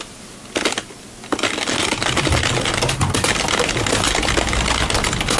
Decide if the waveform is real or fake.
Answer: real